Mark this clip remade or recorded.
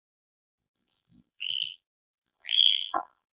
remade